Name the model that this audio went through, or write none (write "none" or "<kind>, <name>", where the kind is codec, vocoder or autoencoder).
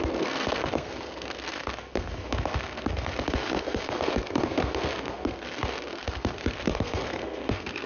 codec, SNAC